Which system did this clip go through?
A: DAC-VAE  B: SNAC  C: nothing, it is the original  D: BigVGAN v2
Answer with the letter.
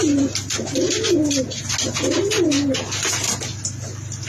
C